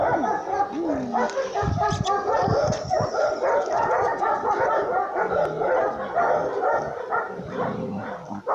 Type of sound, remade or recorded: recorded